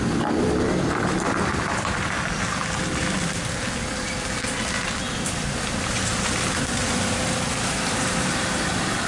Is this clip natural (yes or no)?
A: no